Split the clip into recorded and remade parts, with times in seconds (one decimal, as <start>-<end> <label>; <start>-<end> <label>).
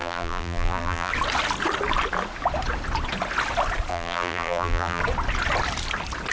0.0-1.1 remade; 1.1-3.9 recorded; 3.9-5.0 remade; 5.0-6.3 recorded